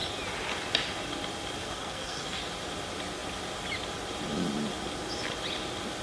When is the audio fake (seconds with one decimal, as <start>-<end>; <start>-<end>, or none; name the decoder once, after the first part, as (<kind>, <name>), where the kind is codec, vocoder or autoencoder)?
1.6-2.4 (codec, SNAC)